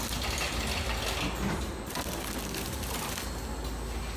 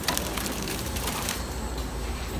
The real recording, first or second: first